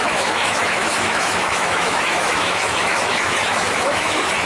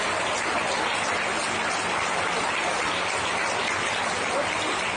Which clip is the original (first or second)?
second